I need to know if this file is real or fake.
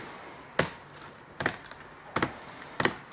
real